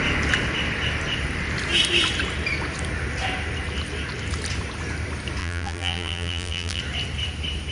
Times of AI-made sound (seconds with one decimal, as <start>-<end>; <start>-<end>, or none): 5.4-6.8